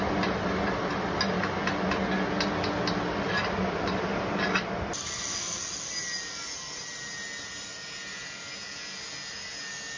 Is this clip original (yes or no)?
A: yes